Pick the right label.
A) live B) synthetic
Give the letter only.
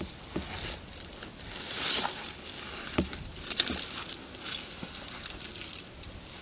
A